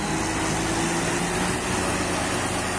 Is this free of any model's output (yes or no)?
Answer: yes